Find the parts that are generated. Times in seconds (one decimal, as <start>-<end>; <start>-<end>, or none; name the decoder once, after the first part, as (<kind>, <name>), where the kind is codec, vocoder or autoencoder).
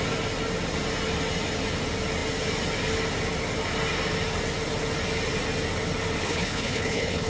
6.2-7.3 (codec, HILCodec)